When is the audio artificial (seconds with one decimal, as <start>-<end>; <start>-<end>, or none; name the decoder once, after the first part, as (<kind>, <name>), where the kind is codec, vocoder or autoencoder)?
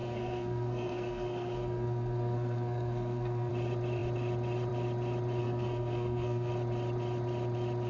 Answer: 0.0-3.5 (codec, SNAC); 5.4-6.5